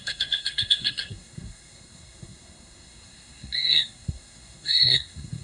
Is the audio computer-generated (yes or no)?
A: yes